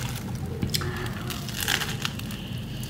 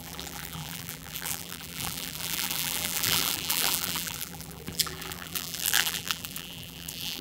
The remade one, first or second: second